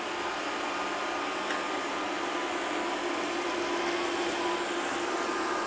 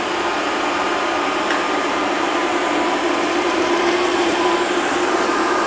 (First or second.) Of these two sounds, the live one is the first